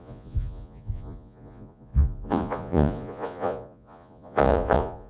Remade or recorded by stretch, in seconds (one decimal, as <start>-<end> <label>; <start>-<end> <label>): 0.0-5.1 remade